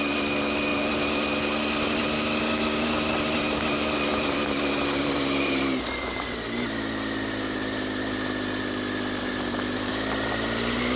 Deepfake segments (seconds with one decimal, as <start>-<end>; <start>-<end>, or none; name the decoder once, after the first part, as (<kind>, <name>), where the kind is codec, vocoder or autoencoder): 4.1-5.6 (vocoder, BigVGAN v2); 9.2-9.9